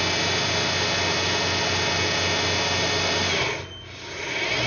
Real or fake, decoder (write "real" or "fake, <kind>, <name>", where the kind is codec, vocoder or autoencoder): real